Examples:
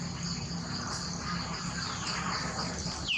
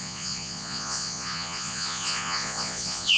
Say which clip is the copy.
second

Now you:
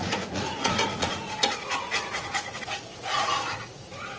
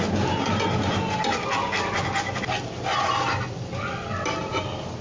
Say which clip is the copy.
first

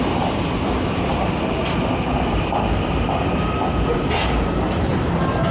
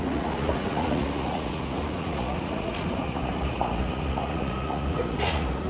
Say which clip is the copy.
second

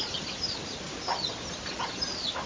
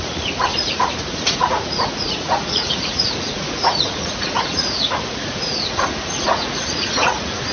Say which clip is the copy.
second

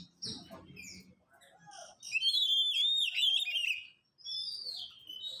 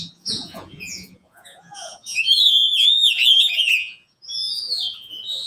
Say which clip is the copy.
second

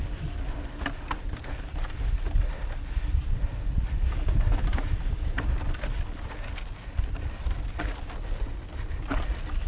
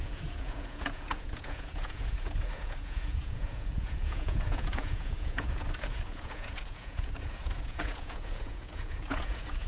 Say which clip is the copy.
second